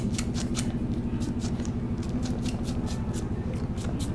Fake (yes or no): no